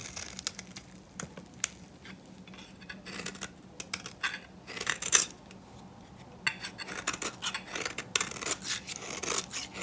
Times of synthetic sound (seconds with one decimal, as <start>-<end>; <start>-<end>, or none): none